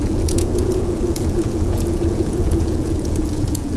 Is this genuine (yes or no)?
no